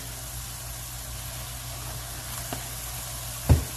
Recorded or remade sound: recorded